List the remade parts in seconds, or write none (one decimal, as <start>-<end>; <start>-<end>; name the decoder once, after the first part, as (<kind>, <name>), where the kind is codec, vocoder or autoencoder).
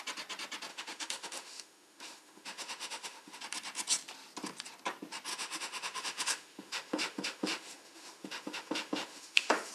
0.7-3.4 (autoencoder, DAC-VAE); 5.3-9.7